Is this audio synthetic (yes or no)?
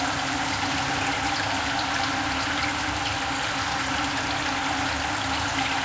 no